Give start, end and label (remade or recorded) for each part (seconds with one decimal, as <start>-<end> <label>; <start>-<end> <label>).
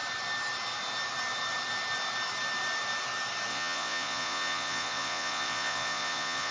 0.0-3.5 recorded; 3.5-6.5 remade